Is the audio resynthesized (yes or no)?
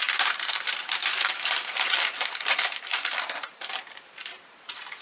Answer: yes